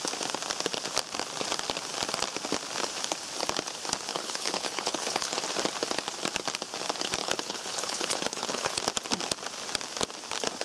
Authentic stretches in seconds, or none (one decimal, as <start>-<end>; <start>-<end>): 0.0-4.1; 5.4-7.2; 8.8-10.6